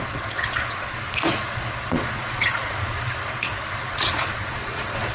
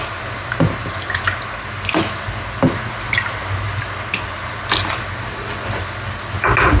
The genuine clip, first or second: second